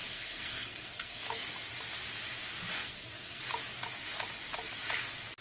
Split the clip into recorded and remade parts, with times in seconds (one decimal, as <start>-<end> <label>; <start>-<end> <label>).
0.0-1.4 remade; 1.4-2.8 recorded; 2.8-3.4 remade; 3.4-5.4 recorded